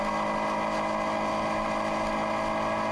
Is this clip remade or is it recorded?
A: recorded